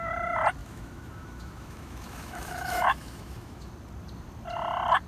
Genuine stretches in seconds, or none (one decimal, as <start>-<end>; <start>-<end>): 0.0-0.6; 3.7-5.1